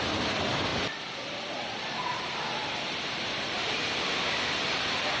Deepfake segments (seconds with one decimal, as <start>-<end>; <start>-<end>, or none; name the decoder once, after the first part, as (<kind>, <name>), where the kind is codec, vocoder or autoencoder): 2.6-3.7 (vocoder, BigVGAN v2)